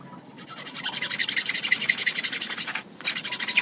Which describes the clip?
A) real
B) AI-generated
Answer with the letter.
A